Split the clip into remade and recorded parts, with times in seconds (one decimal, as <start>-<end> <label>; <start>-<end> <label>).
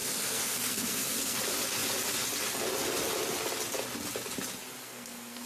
0.0-1.4 remade; 1.4-4.8 recorded; 4.8-5.5 remade